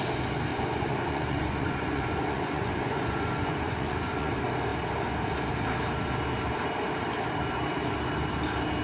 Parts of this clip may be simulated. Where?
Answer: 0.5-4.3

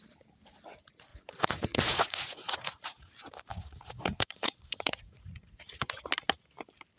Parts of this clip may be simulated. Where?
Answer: 1.1-3.1; 3.5-6.0

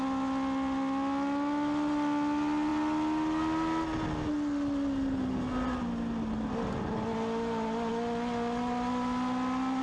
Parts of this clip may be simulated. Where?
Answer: none

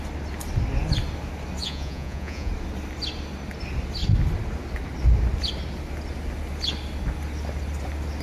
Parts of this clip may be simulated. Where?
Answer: 1.6-2.5